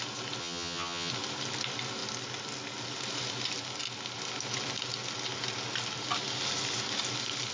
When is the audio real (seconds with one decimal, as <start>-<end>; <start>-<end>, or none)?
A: 0.0-0.4; 1.1-7.5